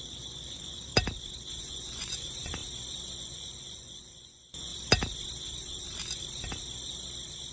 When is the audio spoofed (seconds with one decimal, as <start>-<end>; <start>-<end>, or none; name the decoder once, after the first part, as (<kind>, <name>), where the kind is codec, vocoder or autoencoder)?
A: 0.0-0.9 (vocoder, Vocos); 1.6-2.6; 3.2-4.7